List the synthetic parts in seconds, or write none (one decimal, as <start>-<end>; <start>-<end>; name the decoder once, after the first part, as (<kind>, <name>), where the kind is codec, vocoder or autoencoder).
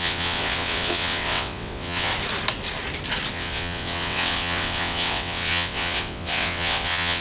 0.0-2.1 (vocoder, WaveNeXt); 3.3-7.2